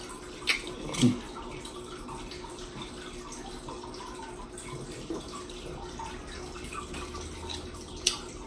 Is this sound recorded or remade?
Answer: recorded